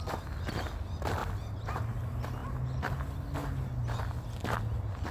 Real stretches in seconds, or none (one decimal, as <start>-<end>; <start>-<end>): 0.0-5.1